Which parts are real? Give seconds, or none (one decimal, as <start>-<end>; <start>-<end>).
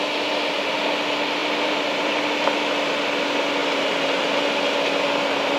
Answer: 0.0-1.4; 2.2-3.6; 4.4-5.6